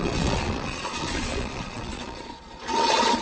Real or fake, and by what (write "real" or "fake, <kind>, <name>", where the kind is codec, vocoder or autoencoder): fake, vocoder, Vocos